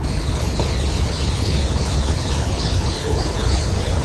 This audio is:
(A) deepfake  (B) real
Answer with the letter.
A